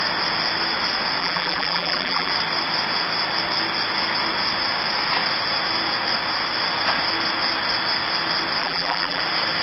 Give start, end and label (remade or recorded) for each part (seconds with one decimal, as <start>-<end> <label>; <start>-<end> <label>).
0.0-1.2 recorded; 1.2-2.3 remade; 2.3-8.6 recorded; 8.6-9.2 remade; 9.2-9.6 recorded